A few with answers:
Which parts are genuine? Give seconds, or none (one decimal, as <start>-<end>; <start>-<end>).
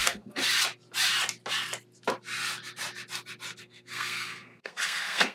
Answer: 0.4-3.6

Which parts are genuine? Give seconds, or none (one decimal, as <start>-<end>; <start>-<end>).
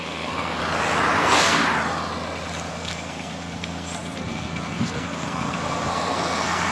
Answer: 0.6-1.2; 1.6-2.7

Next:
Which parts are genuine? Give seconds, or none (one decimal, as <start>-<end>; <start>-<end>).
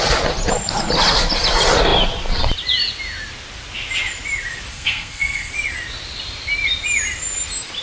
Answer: 0.0-4.7; 5.5-7.8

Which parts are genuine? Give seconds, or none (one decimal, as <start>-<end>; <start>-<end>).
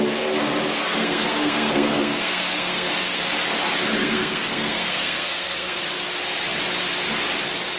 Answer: 0.0-0.7; 3.2-4.0; 5.8-7.8